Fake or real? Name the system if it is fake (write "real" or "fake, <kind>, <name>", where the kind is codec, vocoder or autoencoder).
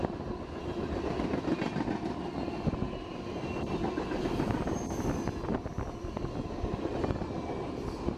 real